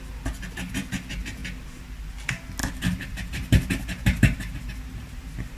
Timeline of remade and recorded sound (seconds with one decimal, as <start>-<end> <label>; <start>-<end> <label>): 0.0-2.6 recorded; 2.6-5.6 remade